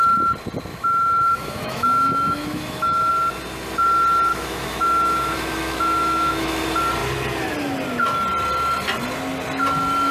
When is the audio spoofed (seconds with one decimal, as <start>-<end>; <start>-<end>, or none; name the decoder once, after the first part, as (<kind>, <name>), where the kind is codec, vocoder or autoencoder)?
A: 0.7-3.1 (autoencoder, DAC-VAE); 4.3-6.6